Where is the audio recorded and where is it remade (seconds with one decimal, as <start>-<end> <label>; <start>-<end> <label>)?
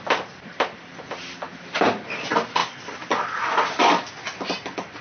0.0-5.0 recorded